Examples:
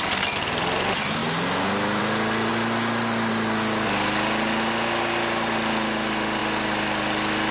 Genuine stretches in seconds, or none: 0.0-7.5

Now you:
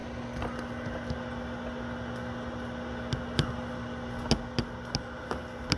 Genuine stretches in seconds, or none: 0.0-5.8

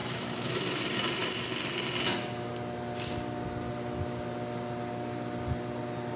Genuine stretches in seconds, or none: 0.5-6.2

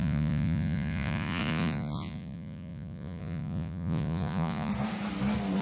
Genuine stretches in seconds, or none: 4.7-5.6

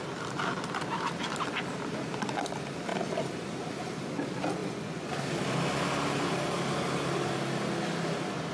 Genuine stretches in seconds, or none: 0.0-4.6; 5.1-8.5

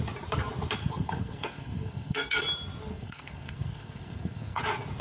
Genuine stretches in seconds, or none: 0.0-0.8; 2.4-2.9; 4.6-5.0

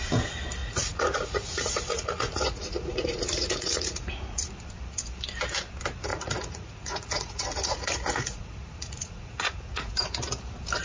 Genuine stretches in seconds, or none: 0.0-0.6; 4.5-6.1; 9.9-10.8